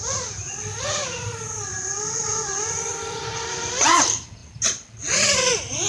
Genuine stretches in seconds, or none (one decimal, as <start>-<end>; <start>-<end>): 1.7-2.6